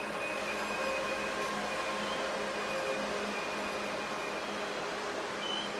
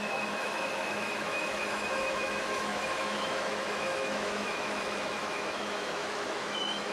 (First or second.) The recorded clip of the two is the first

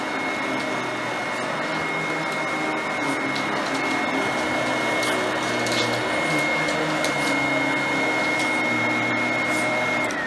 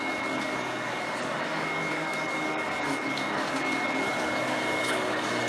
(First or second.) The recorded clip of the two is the first